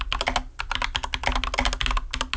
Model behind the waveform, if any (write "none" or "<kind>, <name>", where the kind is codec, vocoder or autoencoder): none